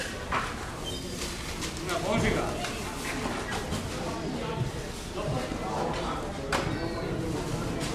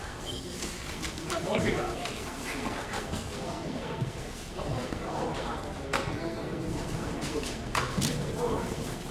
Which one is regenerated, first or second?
second